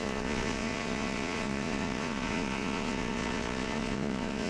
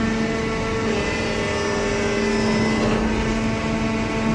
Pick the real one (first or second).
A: second